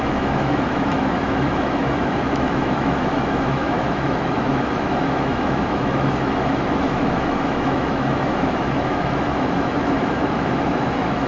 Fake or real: fake